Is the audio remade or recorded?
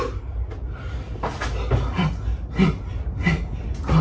recorded